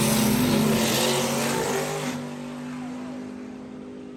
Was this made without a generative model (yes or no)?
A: yes